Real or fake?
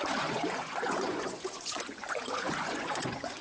fake